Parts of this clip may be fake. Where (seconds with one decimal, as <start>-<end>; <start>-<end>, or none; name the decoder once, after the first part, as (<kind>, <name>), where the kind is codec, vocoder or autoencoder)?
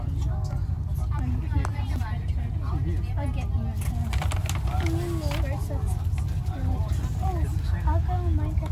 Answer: none